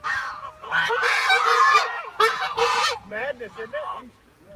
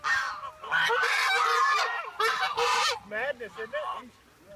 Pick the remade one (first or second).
first